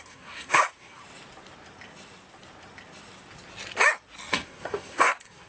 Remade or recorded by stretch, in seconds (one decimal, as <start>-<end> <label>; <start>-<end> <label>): 0.0-1.0 remade; 1.0-4.3 recorded; 4.3-5.5 remade